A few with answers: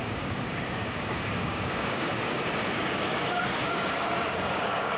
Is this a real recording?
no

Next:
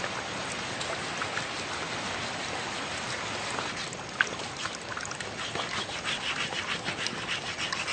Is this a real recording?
yes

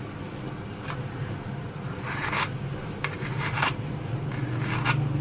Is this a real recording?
yes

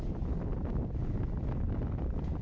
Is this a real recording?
yes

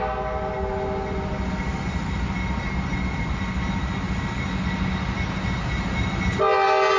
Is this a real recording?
yes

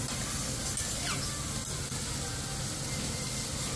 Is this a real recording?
yes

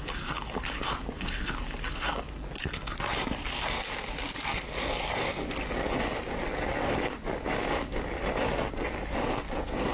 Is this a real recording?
yes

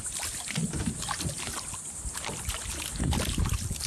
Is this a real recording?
yes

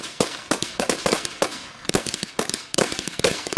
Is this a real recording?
no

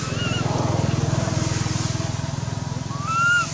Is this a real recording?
yes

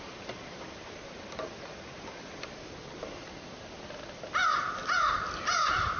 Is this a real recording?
yes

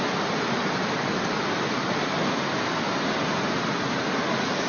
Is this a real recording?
yes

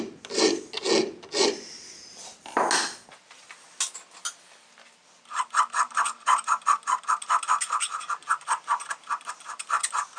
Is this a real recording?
yes